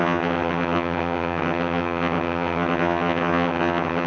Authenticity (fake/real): fake